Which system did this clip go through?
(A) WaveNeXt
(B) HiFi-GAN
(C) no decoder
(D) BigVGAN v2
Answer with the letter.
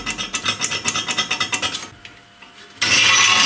C